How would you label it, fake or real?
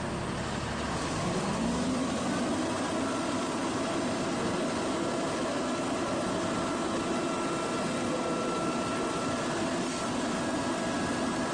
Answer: real